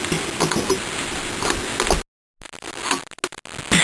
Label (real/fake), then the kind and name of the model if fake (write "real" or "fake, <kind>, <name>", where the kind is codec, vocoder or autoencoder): real